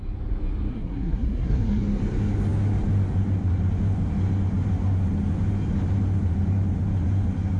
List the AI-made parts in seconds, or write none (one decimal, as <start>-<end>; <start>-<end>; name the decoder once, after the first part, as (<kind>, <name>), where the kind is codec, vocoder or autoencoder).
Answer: 0.7-1.8 (codec, SNAC)